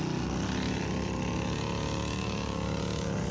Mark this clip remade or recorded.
recorded